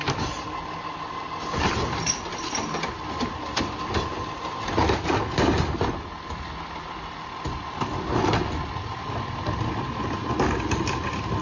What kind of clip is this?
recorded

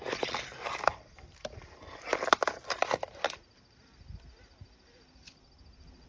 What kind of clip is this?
recorded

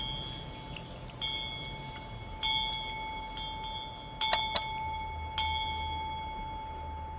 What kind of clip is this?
recorded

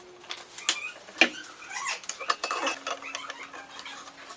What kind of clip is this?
recorded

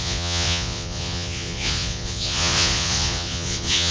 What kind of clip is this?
remade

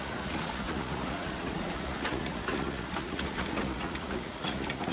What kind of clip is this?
remade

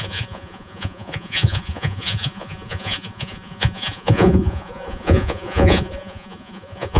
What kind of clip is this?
remade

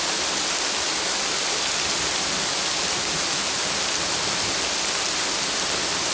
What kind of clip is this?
recorded